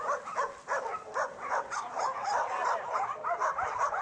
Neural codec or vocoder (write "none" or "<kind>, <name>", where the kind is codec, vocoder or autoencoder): none